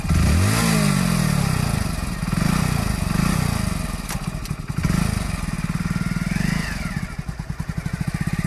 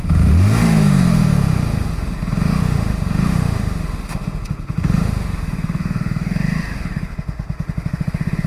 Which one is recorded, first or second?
first